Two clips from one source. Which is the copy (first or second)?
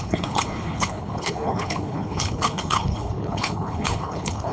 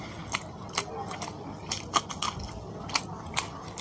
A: first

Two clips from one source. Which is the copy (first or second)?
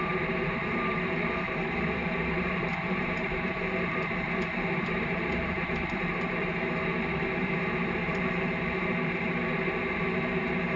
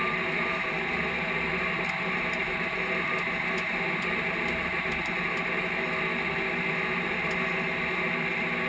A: first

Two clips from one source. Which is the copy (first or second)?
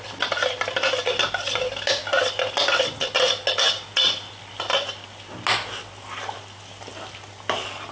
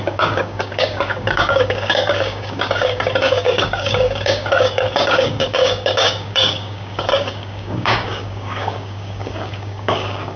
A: second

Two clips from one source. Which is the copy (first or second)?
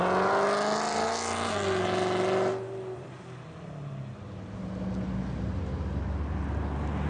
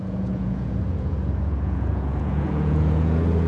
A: second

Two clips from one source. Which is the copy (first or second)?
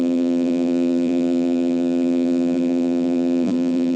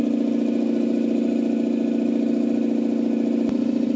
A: first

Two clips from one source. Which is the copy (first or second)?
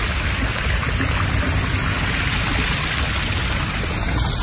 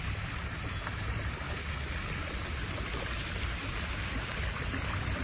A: second